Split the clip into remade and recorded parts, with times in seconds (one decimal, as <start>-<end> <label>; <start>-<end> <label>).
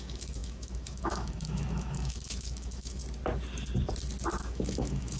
0.0-3.0 remade; 3.0-4.4 recorded; 4.4-5.2 remade